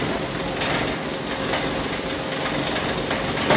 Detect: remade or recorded recorded